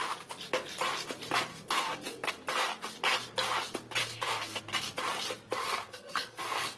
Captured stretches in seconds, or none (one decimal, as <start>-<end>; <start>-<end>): 0.0-1.5; 2.3-4.0; 4.6-5.6